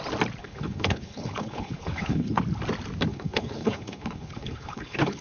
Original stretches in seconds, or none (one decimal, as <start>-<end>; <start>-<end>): 0.0-0.4; 2.4-3.1